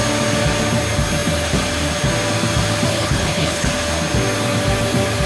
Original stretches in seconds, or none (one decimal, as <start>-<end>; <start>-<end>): 0.0-2.9; 3.7-5.3